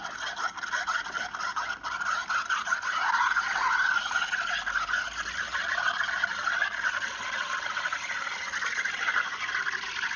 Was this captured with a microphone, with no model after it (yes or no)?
yes